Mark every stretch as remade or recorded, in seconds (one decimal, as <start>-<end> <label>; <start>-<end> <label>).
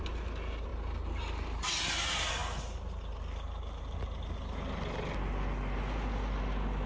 0.0-6.9 recorded